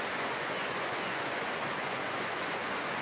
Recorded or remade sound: remade